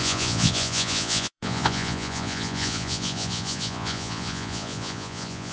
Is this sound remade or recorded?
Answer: remade